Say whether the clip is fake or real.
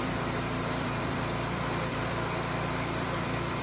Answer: fake